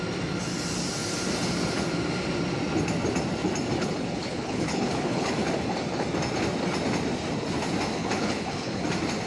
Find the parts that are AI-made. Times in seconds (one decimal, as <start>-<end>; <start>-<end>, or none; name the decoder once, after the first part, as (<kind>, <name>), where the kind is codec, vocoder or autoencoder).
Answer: 3.8-5.3 (codec, HILCodec); 8.0-8.8